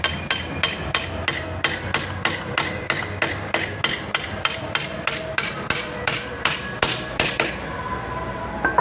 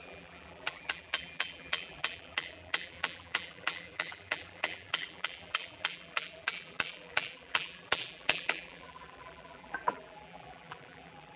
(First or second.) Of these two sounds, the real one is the first